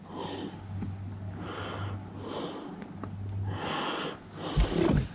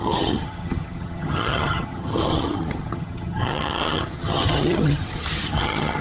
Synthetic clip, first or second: second